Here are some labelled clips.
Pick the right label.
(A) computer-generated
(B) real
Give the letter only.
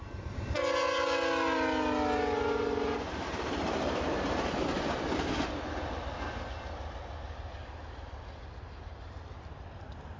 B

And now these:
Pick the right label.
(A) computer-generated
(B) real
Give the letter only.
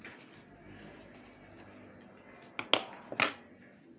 B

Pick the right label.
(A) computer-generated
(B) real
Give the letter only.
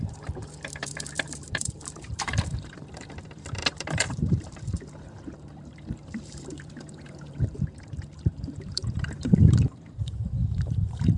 A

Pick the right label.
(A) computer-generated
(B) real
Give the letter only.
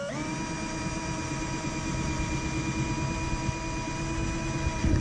B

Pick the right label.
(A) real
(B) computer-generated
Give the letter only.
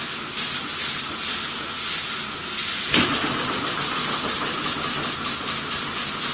A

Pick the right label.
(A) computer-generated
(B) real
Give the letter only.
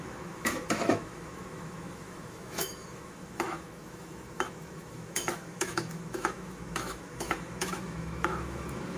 A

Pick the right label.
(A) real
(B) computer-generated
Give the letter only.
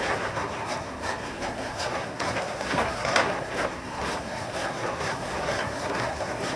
B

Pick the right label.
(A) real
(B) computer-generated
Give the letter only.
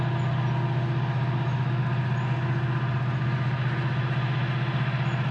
A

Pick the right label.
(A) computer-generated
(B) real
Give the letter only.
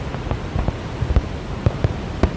B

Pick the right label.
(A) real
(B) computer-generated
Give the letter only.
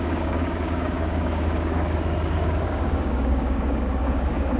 B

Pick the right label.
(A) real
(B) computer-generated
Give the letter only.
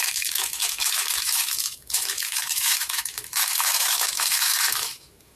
B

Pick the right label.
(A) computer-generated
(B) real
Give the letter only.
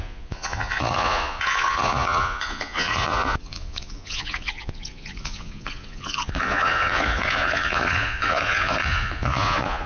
A